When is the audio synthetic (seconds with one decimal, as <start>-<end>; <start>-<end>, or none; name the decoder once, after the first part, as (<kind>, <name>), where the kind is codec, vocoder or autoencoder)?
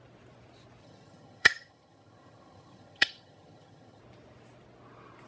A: 0.8-4.0 (vocoder, HiFi-GAN)